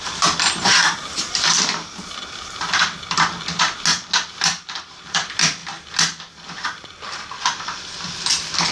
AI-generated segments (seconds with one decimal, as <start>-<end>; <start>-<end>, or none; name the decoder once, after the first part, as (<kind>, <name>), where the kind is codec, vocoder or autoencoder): none